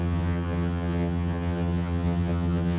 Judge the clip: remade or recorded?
remade